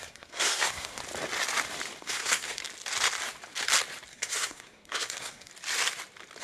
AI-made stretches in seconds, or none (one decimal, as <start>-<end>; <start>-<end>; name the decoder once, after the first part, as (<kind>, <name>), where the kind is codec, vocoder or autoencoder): 0.0-1.0 (codec, SNAC); 2.0-2.6; 4.1-5.5